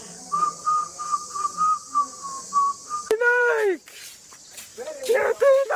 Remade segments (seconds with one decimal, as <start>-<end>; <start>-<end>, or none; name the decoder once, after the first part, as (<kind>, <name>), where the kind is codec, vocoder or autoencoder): 2.8-4.7 (vocoder, BigVGAN v2); 5.2-5.8

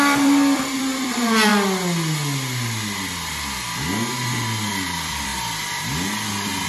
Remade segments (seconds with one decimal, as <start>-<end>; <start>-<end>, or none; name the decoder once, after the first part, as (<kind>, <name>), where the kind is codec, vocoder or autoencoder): 0.0-1.5 (vocoder, BigVGAN v2); 4.7-5.3

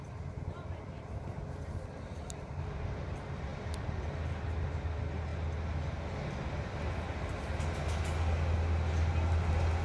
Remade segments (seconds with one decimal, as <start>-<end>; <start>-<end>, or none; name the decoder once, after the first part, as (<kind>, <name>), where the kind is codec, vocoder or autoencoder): none

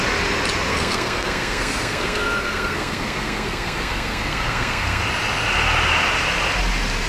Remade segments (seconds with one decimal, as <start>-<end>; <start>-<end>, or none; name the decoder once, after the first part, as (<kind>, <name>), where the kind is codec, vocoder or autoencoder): 0.7-5.0 (codec, SNAC)

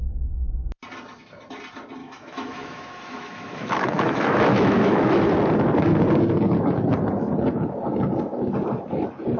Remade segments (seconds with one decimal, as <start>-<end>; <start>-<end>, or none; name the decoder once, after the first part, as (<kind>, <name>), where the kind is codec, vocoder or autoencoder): 2.0-5.2 (autoencoder, DAC-VAE)

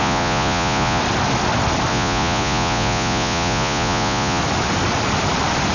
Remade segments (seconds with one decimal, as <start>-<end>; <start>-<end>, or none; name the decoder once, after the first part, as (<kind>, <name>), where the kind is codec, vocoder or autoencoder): 0.0-1.0 (vocoder, Vocos); 1.9-4.4

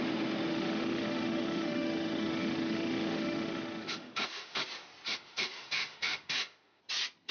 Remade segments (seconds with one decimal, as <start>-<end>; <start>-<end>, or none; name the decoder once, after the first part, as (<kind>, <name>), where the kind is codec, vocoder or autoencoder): 0.5-4.6 (autoencoder, DAC-VAE); 5.1-6.8

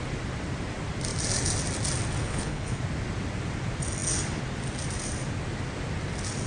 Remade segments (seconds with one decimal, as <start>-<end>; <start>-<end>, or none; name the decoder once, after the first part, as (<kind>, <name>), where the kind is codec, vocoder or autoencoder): 2.2-2.8 (codec, HILCodec)